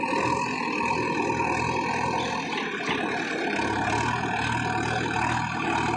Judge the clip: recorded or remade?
recorded